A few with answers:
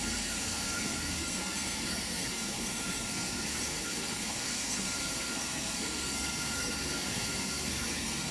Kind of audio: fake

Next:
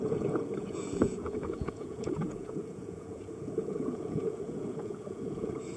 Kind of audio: fake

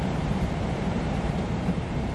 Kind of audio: fake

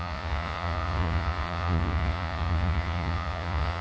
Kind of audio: fake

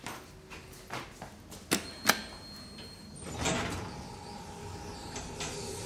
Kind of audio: real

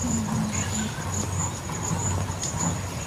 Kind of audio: real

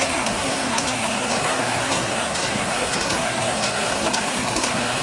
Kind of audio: fake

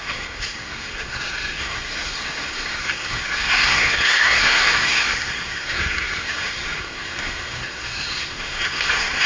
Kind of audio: fake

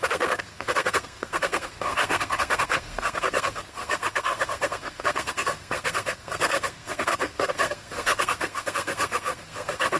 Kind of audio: fake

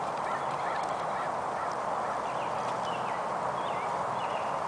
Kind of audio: real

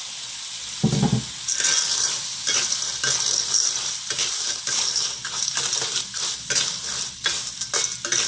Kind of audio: real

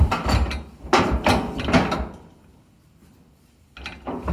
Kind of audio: real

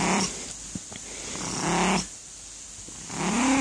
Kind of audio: real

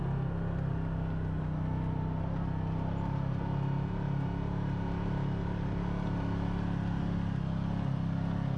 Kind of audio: real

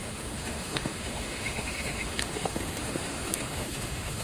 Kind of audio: fake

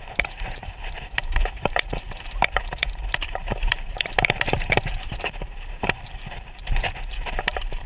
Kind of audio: fake